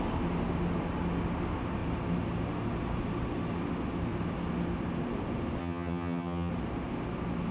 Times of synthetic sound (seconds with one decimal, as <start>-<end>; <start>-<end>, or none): 5.6-6.5